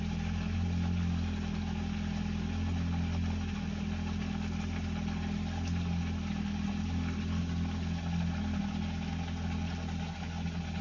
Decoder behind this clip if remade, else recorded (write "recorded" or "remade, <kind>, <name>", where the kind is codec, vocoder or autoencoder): recorded